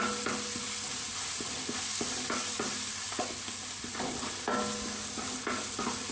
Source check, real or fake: real